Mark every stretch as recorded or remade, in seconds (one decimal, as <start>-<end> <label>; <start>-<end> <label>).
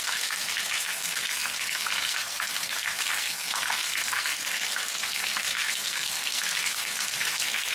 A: 0.0-7.7 remade